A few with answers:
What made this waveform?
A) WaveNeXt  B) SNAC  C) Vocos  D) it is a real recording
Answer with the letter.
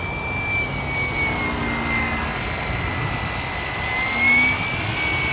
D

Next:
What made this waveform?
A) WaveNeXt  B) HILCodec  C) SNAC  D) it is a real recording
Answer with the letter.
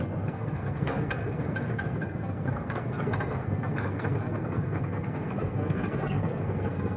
C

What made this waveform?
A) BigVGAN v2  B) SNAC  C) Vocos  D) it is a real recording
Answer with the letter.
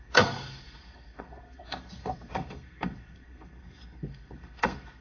B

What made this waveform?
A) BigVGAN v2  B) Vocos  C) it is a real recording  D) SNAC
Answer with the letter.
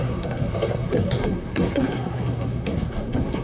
D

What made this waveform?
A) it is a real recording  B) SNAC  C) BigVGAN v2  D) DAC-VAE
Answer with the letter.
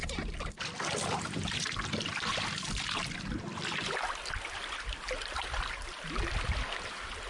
A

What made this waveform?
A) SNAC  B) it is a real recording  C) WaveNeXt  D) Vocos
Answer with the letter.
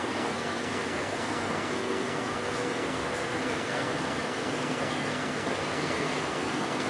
A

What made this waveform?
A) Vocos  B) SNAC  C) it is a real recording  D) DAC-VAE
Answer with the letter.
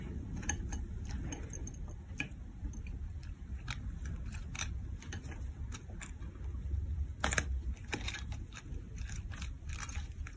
C